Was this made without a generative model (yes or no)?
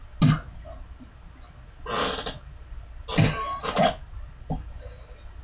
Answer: yes